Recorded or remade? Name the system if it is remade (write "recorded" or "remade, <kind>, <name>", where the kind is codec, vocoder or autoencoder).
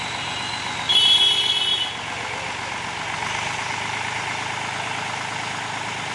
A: recorded